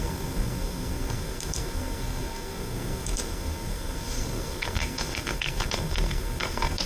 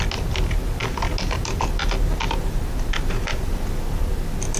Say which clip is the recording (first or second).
second